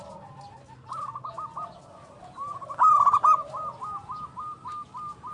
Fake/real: real